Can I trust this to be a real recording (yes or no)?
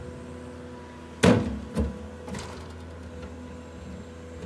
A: yes